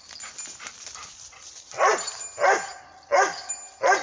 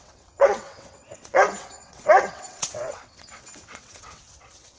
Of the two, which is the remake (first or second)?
second